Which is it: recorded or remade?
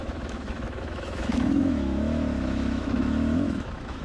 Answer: remade